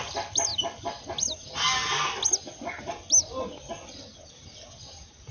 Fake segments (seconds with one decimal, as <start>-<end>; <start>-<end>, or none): none